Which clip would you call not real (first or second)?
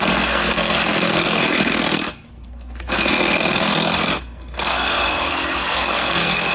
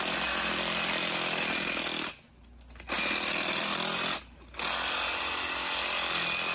first